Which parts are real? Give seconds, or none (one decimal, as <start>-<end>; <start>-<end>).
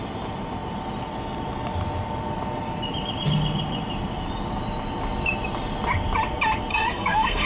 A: 0.0-6.7